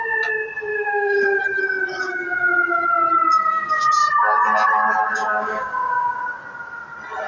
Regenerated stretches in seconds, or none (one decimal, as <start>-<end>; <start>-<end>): 0.7-1.4; 3.3-3.9; 5.2-6.2